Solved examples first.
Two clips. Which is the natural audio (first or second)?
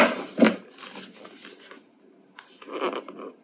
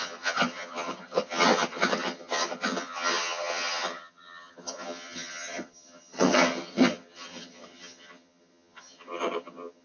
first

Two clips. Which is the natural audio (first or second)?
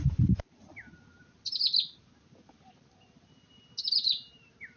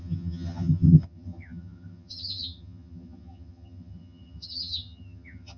first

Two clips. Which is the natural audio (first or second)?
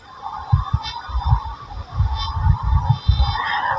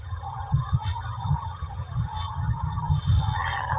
first